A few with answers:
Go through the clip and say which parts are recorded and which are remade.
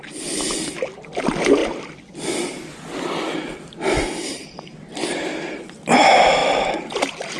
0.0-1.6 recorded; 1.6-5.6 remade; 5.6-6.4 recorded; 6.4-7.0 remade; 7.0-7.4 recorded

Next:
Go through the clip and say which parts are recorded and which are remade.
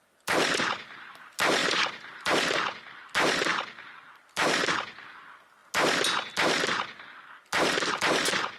0.0-1.6 recorded; 1.6-2.3 remade; 2.3-3.5 recorded; 3.5-4.7 remade; 4.7-8.6 recorded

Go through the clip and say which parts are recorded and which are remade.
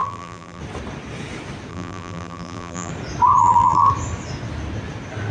0.0-0.6 remade; 0.6-1.7 recorded; 1.7-2.9 remade; 2.9-3.4 recorded; 3.4-3.9 remade; 3.9-5.3 recorded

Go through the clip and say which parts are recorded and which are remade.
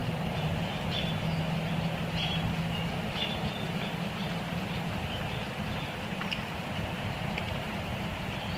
0.0-0.8 remade; 0.8-8.6 recorded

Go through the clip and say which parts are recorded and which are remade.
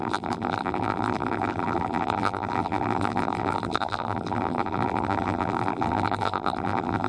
0.0-7.1 remade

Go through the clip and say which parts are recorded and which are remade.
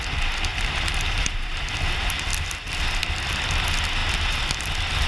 0.0-0.5 recorded; 0.5-1.6 remade; 1.6-5.1 recorded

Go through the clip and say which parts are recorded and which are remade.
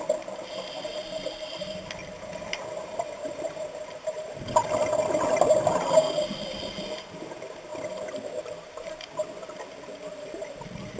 0.0-2.0 recorded; 2.0-4.4 remade; 4.4-11.0 recorded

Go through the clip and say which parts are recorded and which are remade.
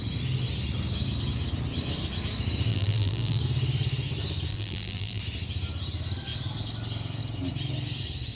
0.0-2.7 recorded; 2.7-3.4 remade; 3.4-4.5 recorded; 4.5-5.2 remade; 5.2-8.3 recorded